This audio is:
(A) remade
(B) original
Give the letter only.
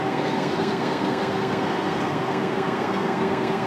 A